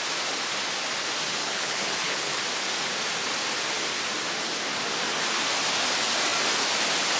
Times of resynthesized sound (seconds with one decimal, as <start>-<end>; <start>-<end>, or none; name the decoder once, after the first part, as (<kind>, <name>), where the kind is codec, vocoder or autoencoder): 1.4-2.4 (codec, HILCodec)